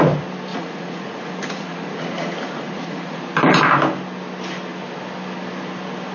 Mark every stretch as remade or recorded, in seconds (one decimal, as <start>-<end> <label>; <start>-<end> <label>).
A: 0.0-0.5 recorded; 0.5-3.2 remade; 3.2-6.1 recorded